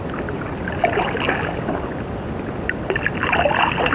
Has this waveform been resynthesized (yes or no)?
no